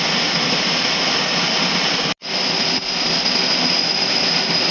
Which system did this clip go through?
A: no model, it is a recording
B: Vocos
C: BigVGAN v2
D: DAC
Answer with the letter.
A